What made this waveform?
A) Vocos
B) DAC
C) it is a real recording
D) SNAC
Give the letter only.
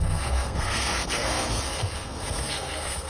D